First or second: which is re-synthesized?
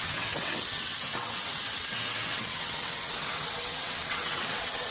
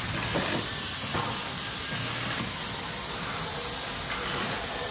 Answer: first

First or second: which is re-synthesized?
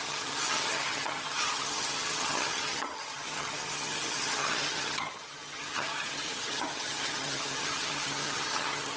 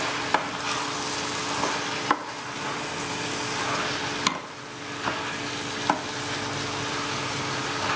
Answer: first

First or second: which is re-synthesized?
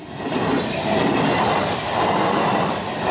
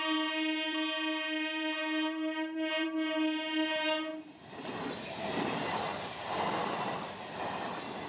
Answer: second